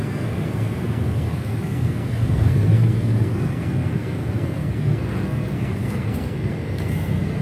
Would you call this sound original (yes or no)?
no